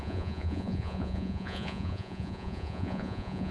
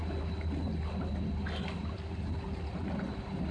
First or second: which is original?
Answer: second